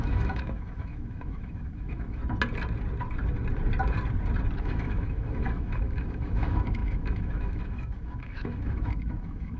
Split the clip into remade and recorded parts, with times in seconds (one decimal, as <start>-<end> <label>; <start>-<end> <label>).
0.0-2.2 remade; 2.2-4.6 recorded; 4.6-9.6 remade